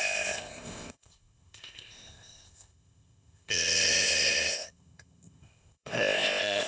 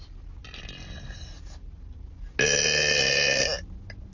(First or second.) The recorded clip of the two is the second